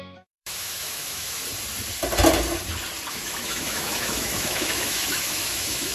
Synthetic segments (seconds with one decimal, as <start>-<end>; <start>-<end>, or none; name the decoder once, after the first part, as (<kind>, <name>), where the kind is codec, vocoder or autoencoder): 0.0-1.4 (autoencoder, DAC-VAE); 3.1-5.9